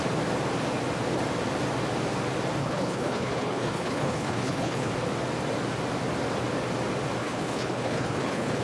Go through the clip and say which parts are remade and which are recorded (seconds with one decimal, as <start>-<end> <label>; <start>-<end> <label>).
0.0-2.6 recorded; 2.6-4.9 remade; 4.9-7.2 recorded; 7.2-8.6 remade